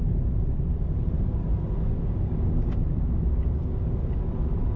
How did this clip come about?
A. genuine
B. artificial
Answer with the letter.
A